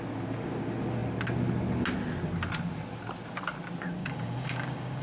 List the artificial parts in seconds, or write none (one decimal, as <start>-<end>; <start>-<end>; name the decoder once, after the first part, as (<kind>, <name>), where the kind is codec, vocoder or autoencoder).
4.0-5.0 (codec, DAC)